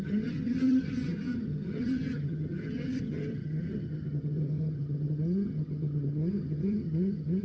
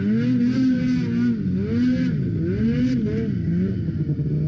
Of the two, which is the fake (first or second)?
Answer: first